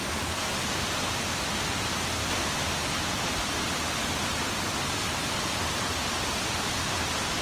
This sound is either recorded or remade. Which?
recorded